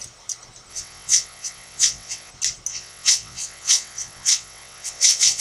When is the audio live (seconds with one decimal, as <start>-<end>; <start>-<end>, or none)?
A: 0.0-0.7; 2.3-2.7